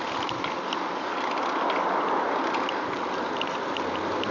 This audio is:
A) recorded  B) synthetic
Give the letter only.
A